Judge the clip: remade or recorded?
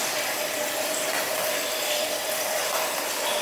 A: recorded